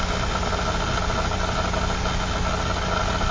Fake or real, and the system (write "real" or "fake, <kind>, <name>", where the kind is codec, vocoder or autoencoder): real